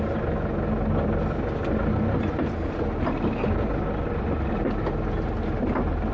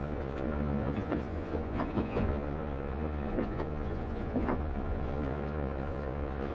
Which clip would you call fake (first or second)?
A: second